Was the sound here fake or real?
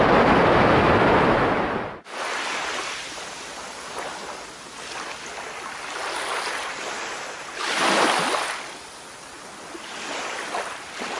real